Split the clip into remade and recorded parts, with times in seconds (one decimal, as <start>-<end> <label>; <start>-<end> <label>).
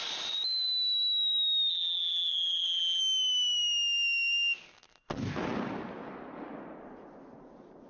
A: 0.0-1.7 recorded; 1.7-3.0 remade; 3.0-7.9 recorded